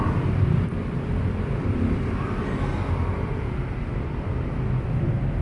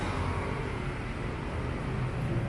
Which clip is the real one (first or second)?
second